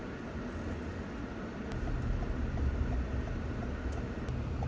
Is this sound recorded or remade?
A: recorded